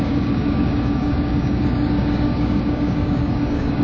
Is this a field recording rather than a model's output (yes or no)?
no